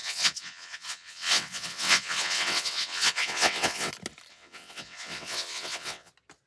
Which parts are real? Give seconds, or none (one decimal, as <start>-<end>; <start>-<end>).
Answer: 3.9-4.3; 6.1-6.5